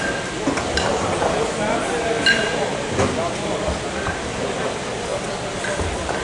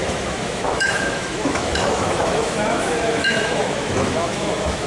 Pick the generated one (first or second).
second